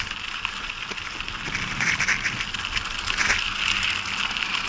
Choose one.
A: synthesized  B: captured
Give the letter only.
B